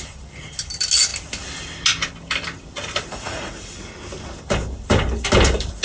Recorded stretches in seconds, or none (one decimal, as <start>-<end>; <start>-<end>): 0.0-3.1; 3.9-5.8